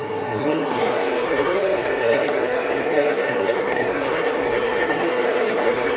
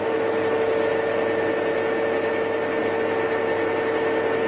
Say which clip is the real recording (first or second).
second